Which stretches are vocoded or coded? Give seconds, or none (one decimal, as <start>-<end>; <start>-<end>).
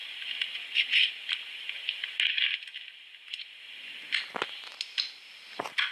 3.5-4.7